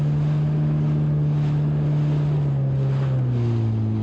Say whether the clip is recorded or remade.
recorded